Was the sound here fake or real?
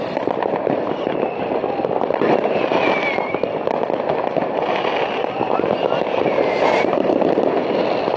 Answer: real